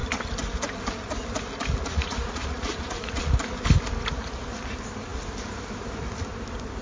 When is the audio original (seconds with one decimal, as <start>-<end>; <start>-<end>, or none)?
0.0-1.8; 3.3-6.8